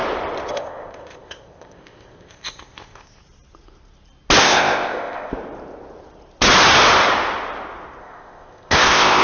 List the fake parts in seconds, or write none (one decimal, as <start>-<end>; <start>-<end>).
0.5-3.2; 4.4-5.3; 8.0-9.2